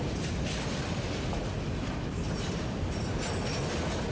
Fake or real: real